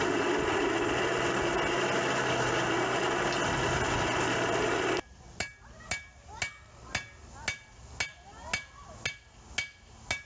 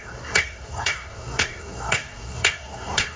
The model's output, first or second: second